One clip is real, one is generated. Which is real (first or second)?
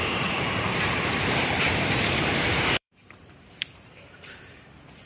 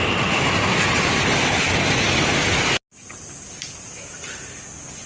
second